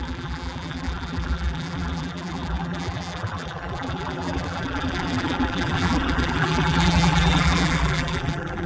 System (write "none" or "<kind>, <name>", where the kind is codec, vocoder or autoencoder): vocoder, BigVGAN v2